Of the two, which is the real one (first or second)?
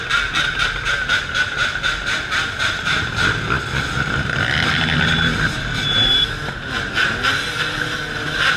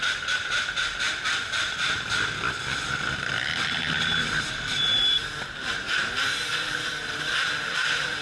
first